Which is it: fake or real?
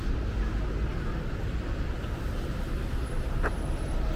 real